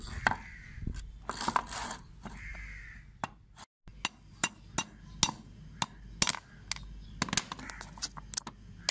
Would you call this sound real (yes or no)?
yes